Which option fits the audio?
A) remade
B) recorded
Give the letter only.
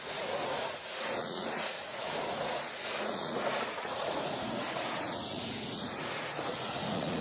A